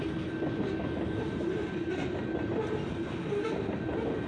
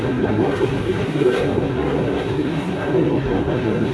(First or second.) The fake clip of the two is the second